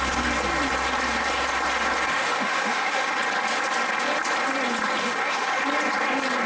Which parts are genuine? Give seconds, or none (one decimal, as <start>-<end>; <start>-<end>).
0.0-2.1; 3.1-5.0; 5.6-6.5